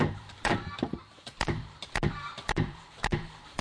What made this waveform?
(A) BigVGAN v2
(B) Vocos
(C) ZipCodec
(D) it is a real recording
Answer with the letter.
A